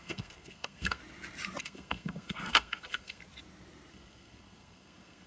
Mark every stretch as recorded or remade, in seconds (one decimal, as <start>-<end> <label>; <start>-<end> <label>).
0.0-1.0 remade; 1.0-1.6 recorded; 1.6-3.2 remade; 3.2-3.9 recorded; 3.9-5.3 remade